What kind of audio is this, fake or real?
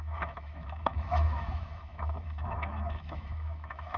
fake